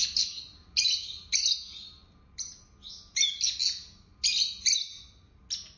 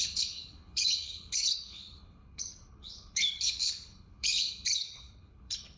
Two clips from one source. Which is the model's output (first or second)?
second